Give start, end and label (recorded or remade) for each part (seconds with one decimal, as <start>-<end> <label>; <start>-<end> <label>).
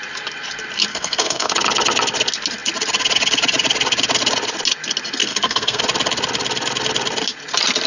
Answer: 0.0-0.9 recorded; 0.9-1.5 remade; 1.5-5.2 recorded; 5.2-5.8 remade; 5.8-7.9 recorded